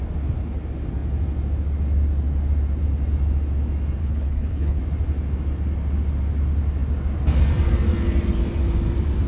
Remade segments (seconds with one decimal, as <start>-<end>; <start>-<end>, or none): 4.0-4.8